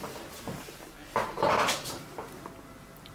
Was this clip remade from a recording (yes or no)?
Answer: no